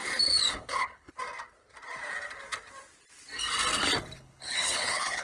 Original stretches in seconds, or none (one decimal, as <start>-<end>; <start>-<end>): 0.0-0.5; 1.1-4.2